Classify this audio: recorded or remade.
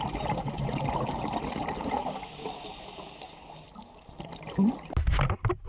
recorded